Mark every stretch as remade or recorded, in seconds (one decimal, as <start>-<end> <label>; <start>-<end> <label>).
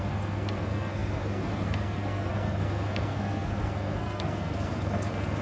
0.0-5.4 remade